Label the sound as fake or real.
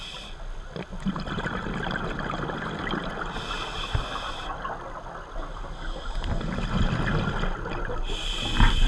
real